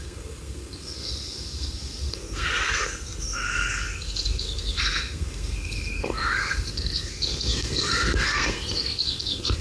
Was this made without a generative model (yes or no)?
no